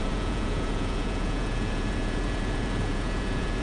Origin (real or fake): fake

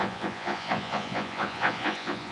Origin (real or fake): fake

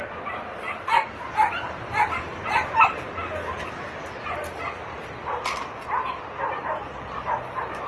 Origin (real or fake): real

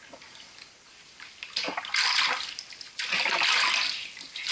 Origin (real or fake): real